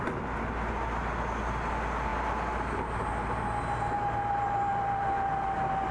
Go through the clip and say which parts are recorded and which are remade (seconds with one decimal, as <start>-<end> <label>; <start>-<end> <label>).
0.0-5.9 recorded